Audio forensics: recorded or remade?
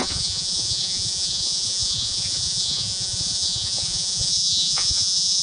remade